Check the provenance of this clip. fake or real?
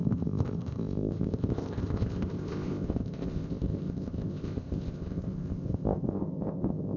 fake